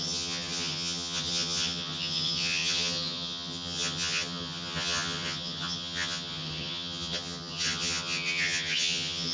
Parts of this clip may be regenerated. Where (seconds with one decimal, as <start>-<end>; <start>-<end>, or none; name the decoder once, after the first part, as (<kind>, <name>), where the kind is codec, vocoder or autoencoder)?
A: 0.0-9.3 (vocoder, HiFi-GAN)